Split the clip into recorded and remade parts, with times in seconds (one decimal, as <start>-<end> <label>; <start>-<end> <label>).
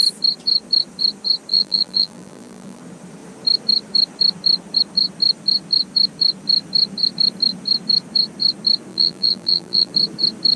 0.0-1.5 recorded; 1.5-2.8 remade; 2.8-8.9 recorded; 8.9-9.9 remade; 9.9-10.6 recorded